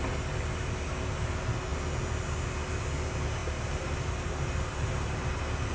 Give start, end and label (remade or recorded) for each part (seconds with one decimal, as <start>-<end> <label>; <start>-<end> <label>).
0.0-3.4 recorded; 3.4-5.3 remade; 5.3-5.7 recorded